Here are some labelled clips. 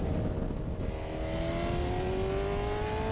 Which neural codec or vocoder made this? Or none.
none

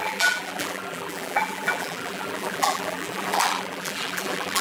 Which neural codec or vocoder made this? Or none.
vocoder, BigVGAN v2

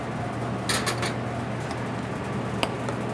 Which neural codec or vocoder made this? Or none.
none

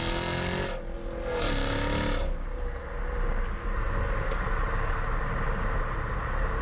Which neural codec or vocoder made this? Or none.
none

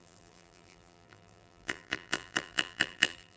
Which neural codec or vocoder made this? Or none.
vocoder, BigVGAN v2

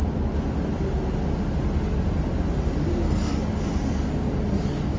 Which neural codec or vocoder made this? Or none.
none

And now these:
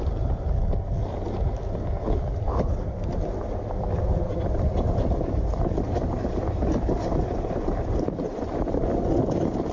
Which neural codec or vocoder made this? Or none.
vocoder, BigVGAN v2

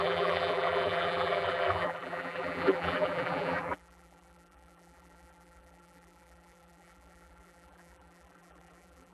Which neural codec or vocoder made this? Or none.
vocoder, BigVGAN v2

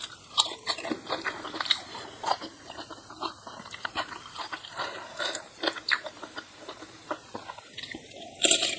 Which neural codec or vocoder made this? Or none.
vocoder, BigVGAN v2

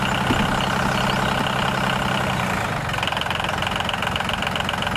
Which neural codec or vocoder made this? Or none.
none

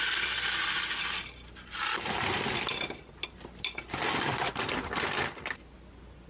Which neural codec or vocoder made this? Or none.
none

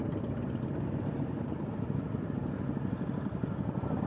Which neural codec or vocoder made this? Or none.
vocoder, BigVGAN v2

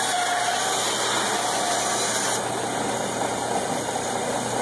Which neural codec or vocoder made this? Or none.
none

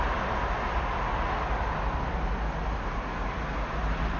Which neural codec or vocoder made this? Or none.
none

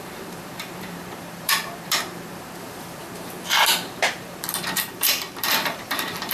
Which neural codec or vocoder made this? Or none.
vocoder, BigVGAN v2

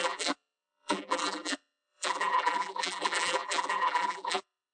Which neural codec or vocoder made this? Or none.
vocoder, BigVGAN v2